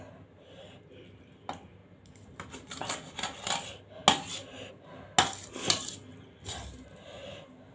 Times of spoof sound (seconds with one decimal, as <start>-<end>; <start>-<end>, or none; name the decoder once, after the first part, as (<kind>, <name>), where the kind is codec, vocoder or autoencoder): none